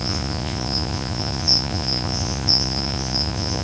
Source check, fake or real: fake